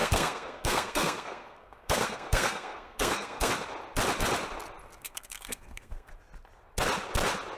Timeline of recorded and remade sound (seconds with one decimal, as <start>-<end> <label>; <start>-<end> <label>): 0.0-3.5 remade; 3.5-4.9 recorded; 4.9-6.1 remade; 6.1-7.6 recorded